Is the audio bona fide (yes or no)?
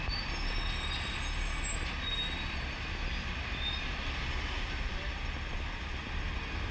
yes